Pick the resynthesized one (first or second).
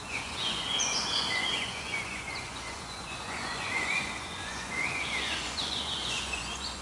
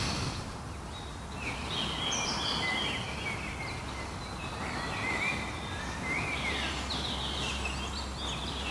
first